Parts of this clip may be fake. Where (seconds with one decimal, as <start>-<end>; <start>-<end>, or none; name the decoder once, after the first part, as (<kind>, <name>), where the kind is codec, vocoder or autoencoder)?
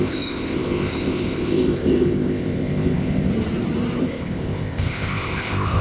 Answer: 0.0-3.3 (codec, ZipCodec); 4.0-5.8